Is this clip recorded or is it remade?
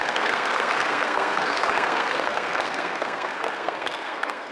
remade